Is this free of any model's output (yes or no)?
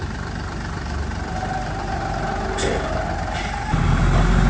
yes